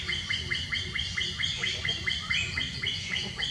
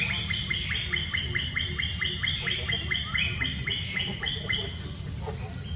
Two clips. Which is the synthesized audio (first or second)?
first